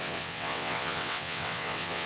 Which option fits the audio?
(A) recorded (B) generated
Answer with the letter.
B